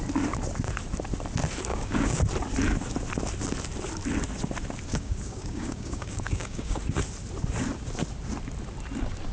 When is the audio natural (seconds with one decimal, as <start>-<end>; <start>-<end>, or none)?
0.0-1.7; 2.2-4.9; 6.8-9.3